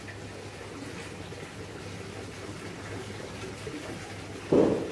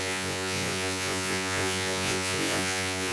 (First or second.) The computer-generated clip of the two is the second